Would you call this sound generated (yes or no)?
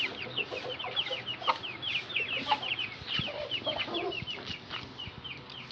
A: no